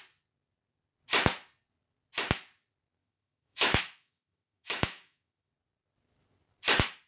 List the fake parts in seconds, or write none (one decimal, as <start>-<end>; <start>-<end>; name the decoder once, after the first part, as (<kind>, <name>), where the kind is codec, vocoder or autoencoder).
3.0-5.5 (autoencoder, DAC-VAE)